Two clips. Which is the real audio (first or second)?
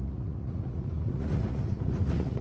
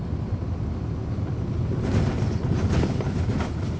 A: second